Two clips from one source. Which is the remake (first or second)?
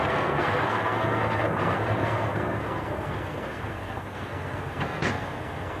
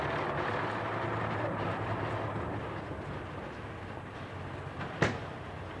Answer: first